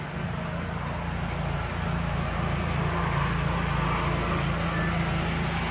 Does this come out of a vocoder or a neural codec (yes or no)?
no